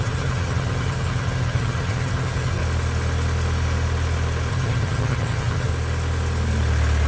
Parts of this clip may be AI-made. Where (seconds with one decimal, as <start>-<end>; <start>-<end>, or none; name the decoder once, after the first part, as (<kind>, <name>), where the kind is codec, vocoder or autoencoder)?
0.0-2.6 (vocoder, HiFi-GAN); 4.5-5.7